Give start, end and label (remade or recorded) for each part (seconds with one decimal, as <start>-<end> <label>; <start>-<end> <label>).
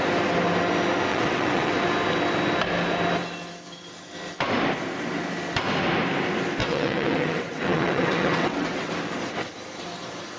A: 0.0-1.1 recorded; 1.1-1.7 remade; 1.7-6.6 recorded; 6.6-8.9 remade; 8.9-10.4 recorded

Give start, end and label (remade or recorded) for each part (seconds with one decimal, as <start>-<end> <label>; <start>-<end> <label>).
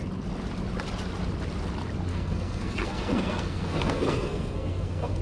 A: 0.0-2.1 recorded; 2.1-5.2 remade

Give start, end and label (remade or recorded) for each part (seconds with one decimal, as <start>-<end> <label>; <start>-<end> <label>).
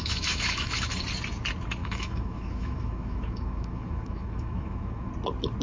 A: 0.0-0.9 remade; 0.9-1.8 recorded; 1.8-5.1 remade; 5.1-5.6 recorded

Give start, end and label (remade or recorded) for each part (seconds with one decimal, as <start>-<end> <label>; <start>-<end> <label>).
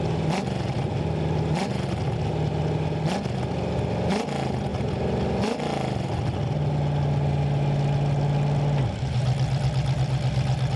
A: 0.0-10.8 recorded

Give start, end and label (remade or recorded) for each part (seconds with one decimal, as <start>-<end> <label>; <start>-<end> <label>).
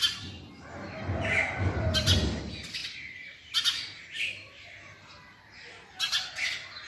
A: 0.0-6.9 recorded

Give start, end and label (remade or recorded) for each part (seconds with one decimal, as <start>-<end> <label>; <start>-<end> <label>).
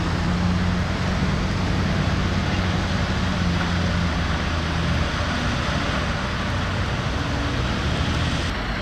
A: 0.0-8.8 recorded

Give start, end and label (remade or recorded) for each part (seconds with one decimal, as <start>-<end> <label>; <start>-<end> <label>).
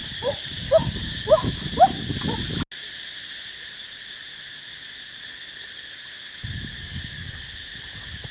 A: 0.0-1.3 remade; 1.3-6.7 recorded; 6.7-7.4 remade; 7.4-8.3 recorded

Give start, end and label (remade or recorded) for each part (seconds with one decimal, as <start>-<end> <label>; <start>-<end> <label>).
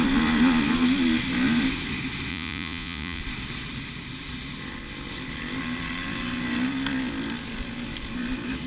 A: 0.0-2.3 recorded; 2.3-3.2 remade; 3.2-8.7 recorded